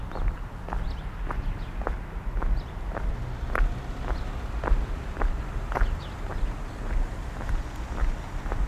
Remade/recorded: recorded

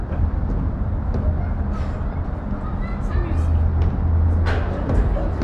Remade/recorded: recorded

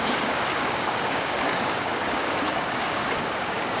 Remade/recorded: remade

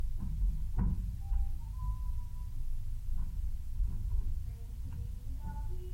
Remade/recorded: recorded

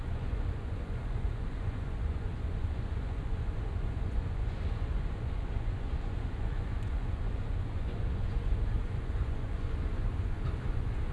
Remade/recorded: remade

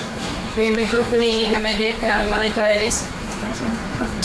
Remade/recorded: remade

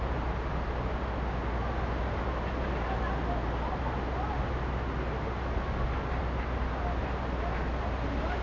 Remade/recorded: recorded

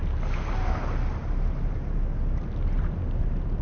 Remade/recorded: recorded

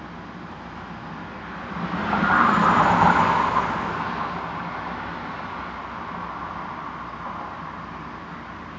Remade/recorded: recorded